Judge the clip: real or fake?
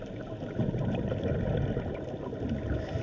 real